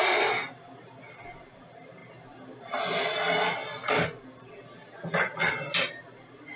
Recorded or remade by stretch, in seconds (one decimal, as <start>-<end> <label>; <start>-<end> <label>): 0.0-6.6 recorded